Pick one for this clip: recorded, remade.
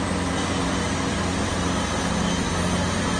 recorded